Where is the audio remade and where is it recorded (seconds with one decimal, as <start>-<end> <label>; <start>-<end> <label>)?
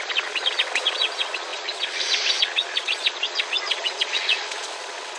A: 0.0-5.2 remade